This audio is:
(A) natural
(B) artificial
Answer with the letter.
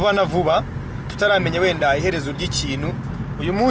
A